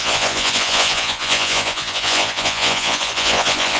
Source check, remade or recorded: remade